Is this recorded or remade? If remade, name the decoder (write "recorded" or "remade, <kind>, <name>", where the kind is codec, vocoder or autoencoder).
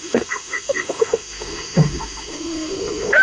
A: remade, autoencoder, DAC-VAE